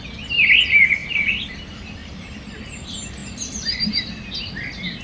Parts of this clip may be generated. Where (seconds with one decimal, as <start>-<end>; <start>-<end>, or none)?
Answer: 1.0-1.6; 2.0-2.8; 3.2-4.3